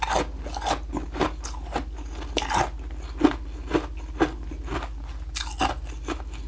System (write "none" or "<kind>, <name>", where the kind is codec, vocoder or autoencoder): none